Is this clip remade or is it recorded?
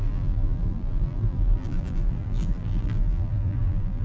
remade